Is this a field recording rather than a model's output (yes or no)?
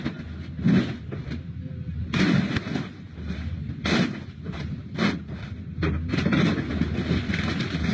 yes